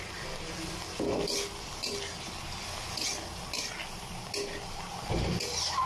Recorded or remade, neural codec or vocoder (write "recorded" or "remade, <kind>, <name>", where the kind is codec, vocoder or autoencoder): recorded